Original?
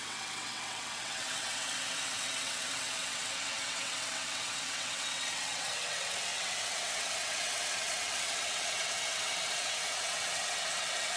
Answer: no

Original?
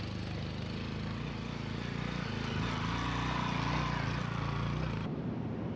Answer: yes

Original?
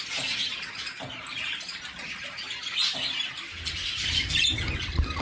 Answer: yes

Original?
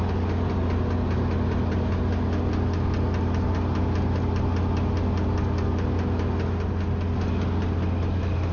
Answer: yes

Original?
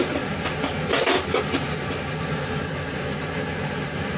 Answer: yes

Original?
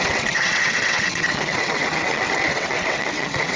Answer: no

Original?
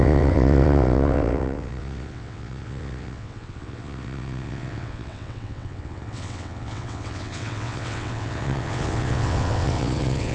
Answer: no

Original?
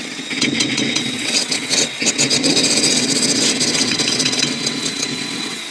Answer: no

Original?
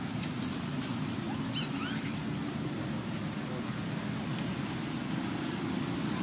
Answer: yes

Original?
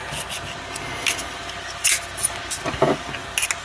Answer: yes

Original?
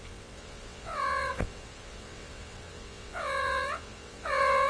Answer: no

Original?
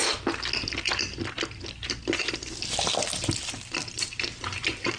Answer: yes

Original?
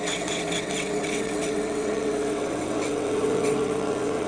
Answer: no